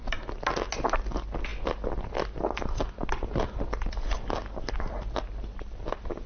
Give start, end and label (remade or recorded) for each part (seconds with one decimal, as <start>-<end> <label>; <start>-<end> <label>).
0.0-6.3 recorded